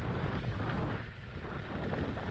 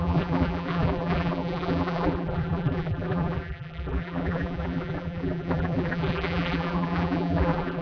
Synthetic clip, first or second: second